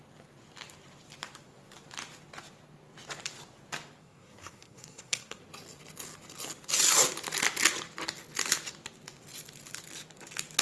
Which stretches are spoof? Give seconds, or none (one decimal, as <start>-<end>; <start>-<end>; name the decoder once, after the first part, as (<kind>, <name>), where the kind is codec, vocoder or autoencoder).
4.0-5.4 (codec, SNAC)